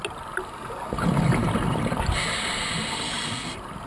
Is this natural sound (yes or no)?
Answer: yes